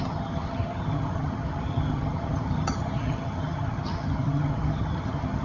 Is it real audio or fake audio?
fake